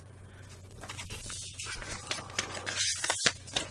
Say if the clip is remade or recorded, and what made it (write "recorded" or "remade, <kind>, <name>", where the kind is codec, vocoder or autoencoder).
remade, vocoder, Vocos